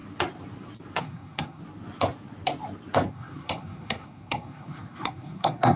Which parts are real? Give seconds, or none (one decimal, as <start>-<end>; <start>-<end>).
0.0-1.0; 1.6-3.1

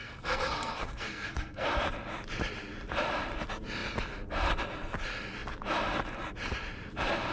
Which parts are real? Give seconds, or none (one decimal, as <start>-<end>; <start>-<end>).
1.7-7.3

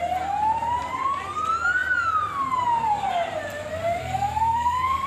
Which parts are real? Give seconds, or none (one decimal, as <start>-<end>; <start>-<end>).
0.0-4.0

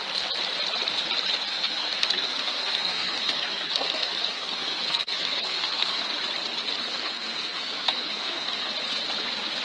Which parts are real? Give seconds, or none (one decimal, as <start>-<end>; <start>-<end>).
0.0-1.5; 6.0-6.9; 8.7-9.6

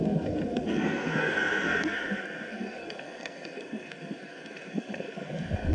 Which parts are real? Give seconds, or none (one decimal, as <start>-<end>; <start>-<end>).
none